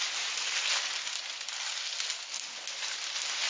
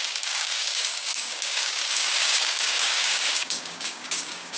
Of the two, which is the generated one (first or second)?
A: second